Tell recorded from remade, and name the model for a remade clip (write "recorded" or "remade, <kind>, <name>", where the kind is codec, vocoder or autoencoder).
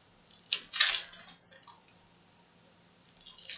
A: recorded